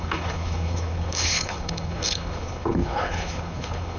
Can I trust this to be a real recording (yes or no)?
no